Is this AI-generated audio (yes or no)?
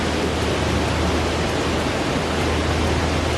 no